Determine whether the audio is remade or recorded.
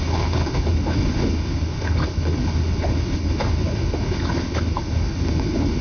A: remade